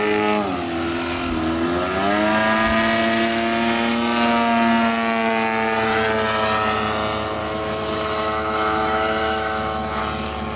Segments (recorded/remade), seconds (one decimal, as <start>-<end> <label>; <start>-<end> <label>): 0.0-7.4 recorded; 7.4-10.0 remade; 10.0-10.6 recorded